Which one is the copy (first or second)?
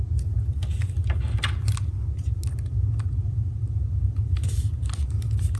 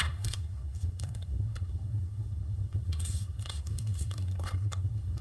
second